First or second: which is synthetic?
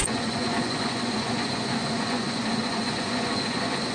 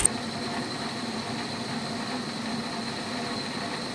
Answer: first